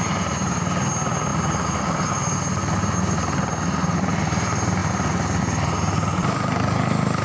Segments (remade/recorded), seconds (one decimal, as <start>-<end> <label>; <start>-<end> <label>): 0.0-7.2 recorded